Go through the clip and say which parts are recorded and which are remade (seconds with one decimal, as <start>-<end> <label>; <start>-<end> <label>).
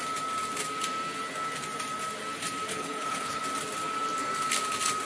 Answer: 0.0-2.7 recorded; 2.7-3.4 remade; 3.4-5.1 recorded